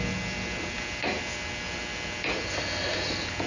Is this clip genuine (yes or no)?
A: yes